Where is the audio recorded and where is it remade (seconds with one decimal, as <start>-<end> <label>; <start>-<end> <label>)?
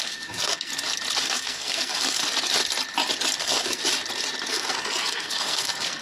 0.0-0.7 remade; 0.7-1.2 recorded; 1.2-2.2 remade; 2.2-3.4 recorded; 3.4-3.8 remade; 3.8-4.5 recorded; 4.5-6.0 remade